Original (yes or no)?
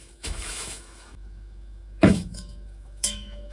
no